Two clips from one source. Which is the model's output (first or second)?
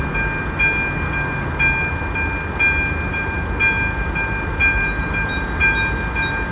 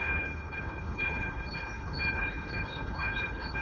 second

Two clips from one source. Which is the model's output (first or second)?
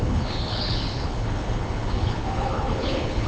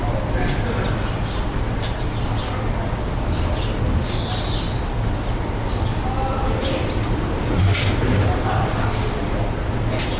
first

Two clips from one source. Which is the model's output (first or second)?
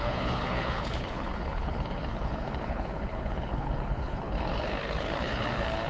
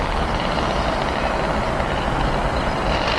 first